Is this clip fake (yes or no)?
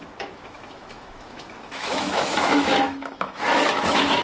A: yes